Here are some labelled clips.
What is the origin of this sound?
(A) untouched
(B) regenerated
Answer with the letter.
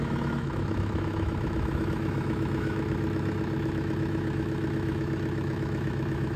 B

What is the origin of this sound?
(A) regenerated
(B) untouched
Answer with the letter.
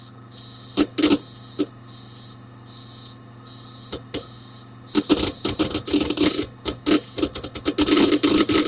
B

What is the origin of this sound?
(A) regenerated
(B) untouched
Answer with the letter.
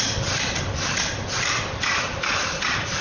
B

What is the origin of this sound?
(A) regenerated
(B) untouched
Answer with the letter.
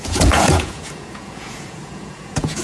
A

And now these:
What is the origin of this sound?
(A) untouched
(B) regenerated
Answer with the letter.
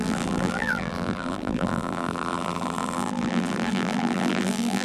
B